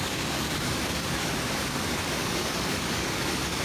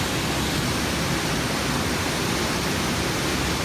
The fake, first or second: first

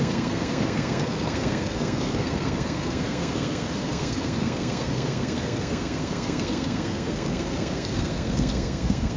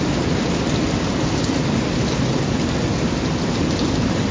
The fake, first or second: first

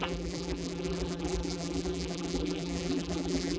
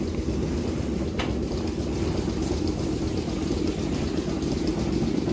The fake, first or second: first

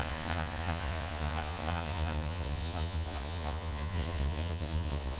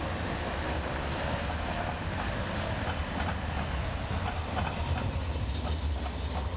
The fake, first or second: first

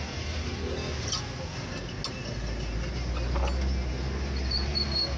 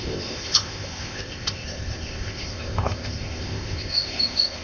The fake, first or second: second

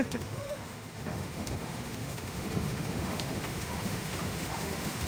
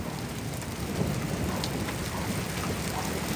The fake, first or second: first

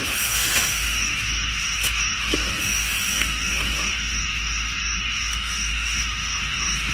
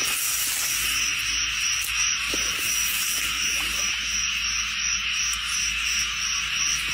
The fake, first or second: first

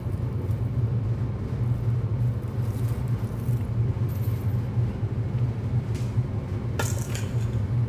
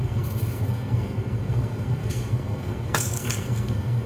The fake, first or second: second